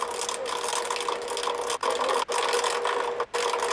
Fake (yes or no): no